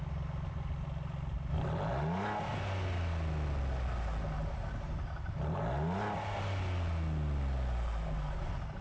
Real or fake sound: real